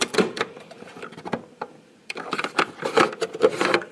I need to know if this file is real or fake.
fake